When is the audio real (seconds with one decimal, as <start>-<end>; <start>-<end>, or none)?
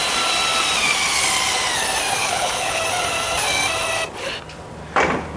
0.0-2.2; 2.8-5.4